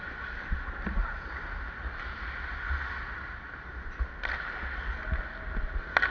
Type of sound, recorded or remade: recorded